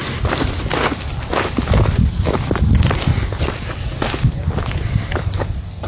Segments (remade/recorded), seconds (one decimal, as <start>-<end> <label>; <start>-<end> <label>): 0.0-5.9 recorded